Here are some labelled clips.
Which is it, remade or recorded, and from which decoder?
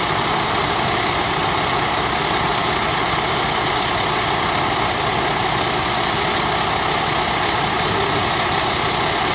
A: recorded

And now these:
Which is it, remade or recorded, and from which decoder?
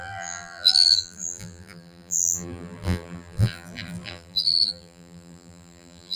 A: remade, vocoder, BigVGAN v2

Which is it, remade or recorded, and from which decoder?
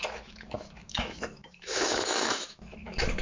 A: remade, autoencoder, DAC-VAE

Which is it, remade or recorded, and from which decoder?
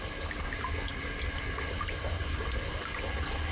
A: recorded